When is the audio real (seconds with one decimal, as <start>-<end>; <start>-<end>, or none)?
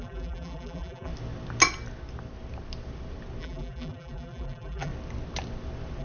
1.1-3.4; 4.9-6.0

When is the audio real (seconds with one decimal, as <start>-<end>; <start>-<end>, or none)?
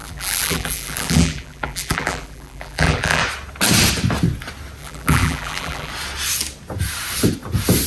3.2-4.8; 5.9-7.9